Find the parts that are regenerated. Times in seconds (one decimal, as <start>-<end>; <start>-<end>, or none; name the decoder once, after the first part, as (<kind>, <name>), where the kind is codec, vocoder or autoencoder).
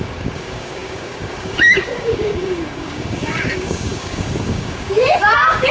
0.0-5.7 (codec, DAC)